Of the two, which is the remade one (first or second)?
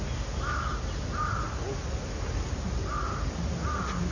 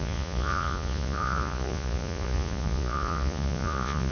second